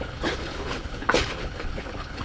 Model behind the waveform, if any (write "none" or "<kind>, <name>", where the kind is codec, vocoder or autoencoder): codec, HILCodec